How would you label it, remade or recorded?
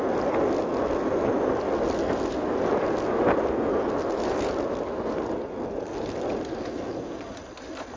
recorded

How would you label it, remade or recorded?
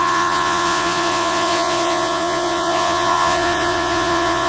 remade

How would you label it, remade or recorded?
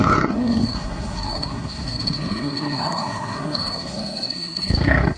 remade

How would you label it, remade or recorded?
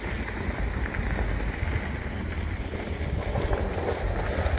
recorded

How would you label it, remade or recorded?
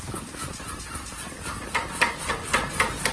recorded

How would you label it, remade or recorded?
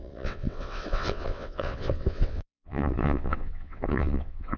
remade